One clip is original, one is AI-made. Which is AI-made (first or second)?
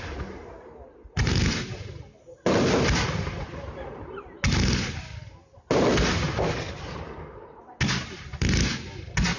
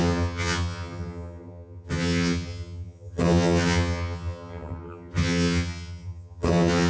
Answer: second